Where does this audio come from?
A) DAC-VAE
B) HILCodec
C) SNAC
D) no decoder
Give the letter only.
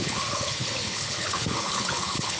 B